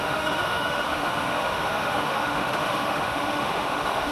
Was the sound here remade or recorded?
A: remade